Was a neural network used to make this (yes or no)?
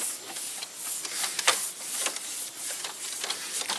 no